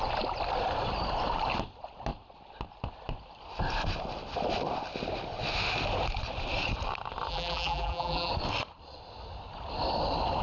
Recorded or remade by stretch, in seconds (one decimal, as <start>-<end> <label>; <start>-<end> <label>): 0.0-7.3 recorded; 7.3-8.3 remade; 8.3-10.4 recorded